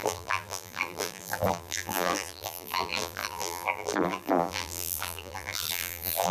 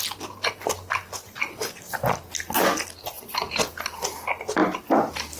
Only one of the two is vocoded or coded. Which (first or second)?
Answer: first